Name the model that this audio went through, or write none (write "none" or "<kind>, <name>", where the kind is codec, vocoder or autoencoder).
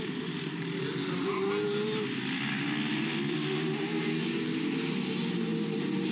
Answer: none